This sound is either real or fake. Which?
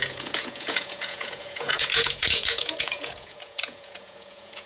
fake